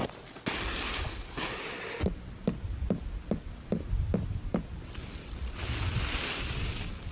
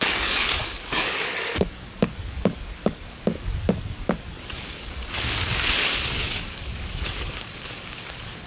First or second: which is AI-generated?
second